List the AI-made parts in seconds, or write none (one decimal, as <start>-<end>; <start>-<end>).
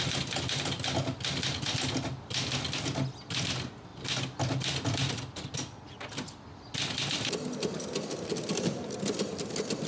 none